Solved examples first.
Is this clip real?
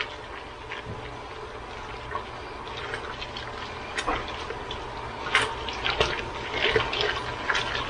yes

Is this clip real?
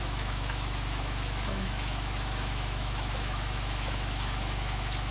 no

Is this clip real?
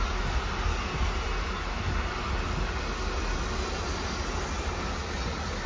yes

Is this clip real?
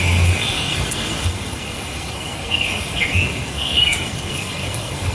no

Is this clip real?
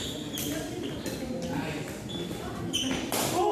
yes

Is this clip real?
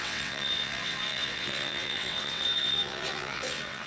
no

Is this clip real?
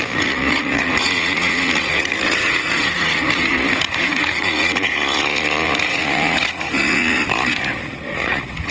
no